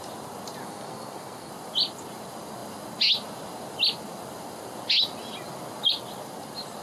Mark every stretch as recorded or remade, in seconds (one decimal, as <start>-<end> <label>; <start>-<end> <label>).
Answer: 0.0-0.6 recorded; 0.6-1.5 remade; 1.5-6.8 recorded